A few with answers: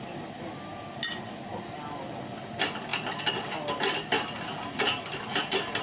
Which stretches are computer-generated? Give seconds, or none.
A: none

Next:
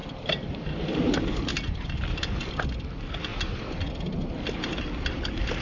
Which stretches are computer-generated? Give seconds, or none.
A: 0.0-2.5 (vocoder, BigVGAN v2); 3.3-3.9